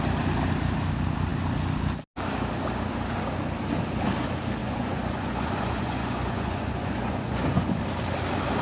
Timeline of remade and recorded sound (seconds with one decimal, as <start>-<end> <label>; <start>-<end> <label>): 0.0-4.6 recorded; 4.6-7.8 remade; 7.8-8.6 recorded